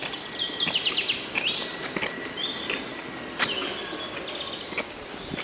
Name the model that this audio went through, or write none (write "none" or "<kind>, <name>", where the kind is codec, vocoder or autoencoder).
none